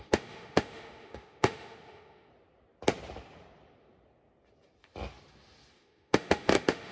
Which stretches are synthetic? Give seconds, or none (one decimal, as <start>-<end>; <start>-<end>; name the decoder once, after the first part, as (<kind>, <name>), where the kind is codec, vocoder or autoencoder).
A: 0.0-2.3 (autoencoder, DAC-VAE); 5.7-6.9